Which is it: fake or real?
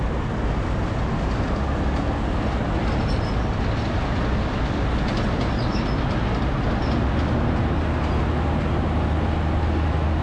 real